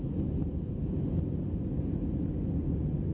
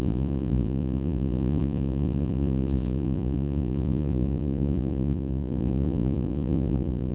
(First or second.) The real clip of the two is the first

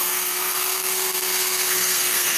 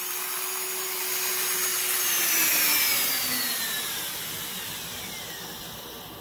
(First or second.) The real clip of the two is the second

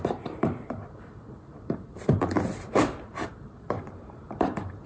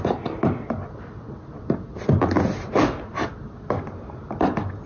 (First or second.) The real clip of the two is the second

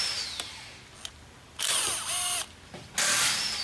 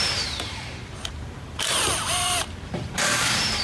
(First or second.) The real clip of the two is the first